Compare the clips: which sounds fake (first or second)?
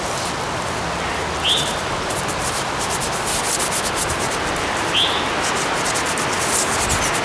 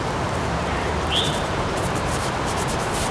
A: second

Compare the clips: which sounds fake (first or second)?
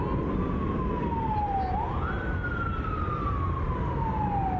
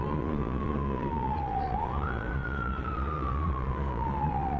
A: second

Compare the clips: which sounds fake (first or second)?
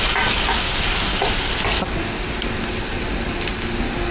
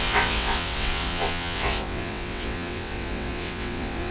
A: second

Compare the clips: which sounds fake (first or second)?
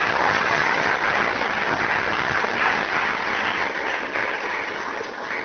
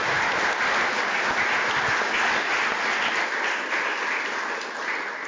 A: first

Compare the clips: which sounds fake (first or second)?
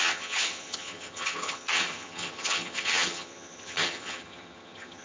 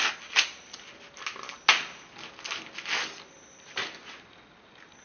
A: first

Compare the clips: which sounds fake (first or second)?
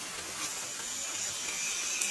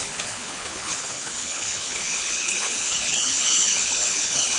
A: second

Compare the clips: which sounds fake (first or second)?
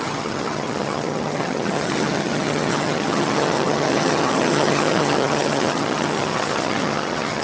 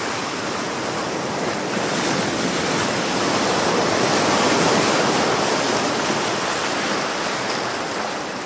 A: first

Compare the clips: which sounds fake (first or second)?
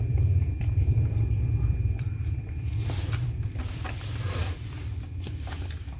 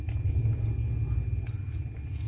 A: first